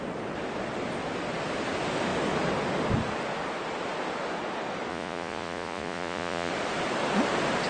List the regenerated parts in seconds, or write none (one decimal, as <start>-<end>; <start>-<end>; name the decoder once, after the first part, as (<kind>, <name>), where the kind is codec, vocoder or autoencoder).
4.9-6.5 (vocoder, Vocos)